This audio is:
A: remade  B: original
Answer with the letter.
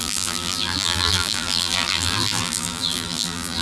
A